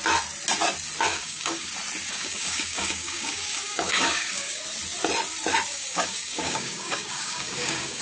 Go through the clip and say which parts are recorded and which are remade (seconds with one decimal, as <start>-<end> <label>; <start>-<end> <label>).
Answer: 0.0-1.1 recorded; 1.1-1.7 remade; 1.7-2.1 recorded; 2.1-4.6 remade; 4.6-5.7 recorded; 5.7-8.0 remade